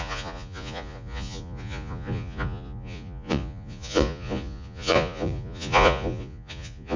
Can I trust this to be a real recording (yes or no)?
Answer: no